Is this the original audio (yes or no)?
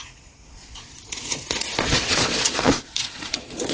no